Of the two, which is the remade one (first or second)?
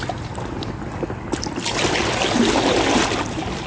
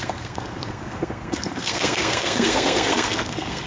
second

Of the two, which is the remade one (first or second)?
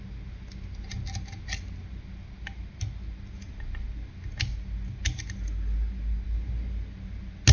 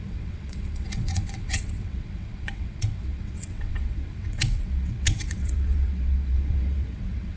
second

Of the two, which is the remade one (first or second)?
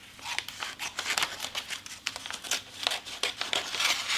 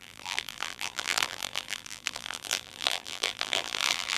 second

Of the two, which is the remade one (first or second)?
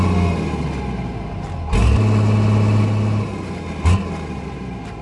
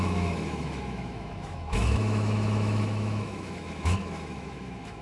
second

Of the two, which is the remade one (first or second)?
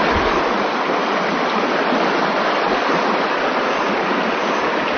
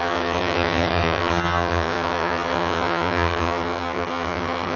second